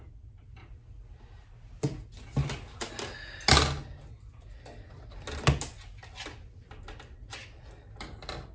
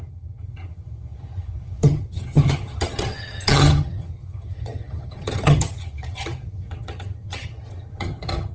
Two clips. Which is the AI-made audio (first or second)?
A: second